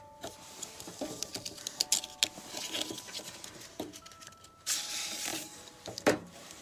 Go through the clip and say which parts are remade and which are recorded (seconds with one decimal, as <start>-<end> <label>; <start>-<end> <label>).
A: 0.0-1.3 remade; 1.3-3.6 recorded; 3.6-6.6 remade